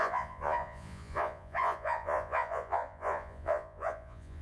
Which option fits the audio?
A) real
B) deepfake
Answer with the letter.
B